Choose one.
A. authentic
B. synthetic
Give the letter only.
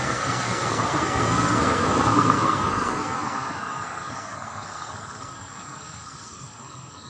B